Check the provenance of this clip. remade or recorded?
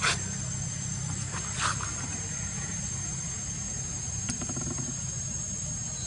recorded